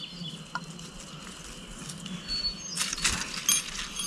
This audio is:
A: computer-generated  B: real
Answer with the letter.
B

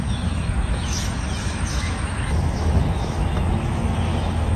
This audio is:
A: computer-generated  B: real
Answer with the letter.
A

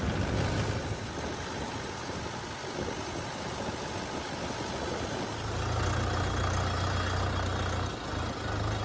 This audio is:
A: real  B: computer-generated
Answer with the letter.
A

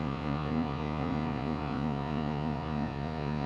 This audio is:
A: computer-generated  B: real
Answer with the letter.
A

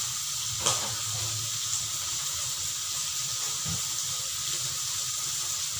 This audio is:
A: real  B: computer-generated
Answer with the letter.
A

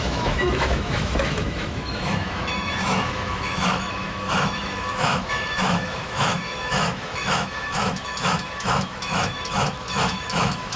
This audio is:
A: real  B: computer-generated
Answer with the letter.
B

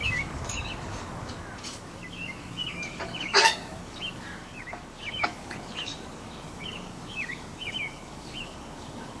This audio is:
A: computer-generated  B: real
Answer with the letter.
A